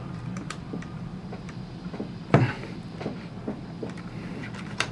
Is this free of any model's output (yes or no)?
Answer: no